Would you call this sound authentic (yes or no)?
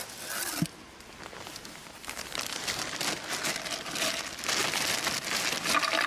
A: yes